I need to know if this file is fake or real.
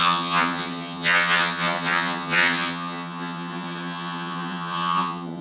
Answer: fake